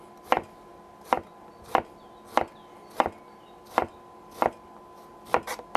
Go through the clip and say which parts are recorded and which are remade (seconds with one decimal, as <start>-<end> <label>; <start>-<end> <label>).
0.0-5.8 recorded